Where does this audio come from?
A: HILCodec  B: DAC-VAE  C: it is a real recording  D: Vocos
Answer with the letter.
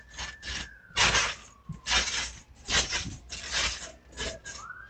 C